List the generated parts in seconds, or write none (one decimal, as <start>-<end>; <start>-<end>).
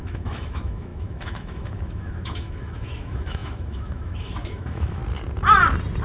0.0-5.0